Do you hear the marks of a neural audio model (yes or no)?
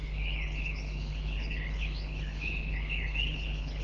yes